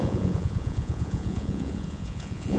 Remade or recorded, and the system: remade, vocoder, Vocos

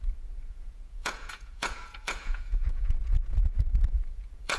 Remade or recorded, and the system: remade, vocoder, Vocos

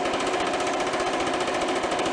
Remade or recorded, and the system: recorded